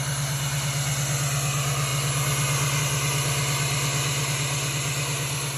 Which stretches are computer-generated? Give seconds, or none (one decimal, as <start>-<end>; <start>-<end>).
none